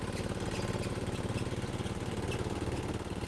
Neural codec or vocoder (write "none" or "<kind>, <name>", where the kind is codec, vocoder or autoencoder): none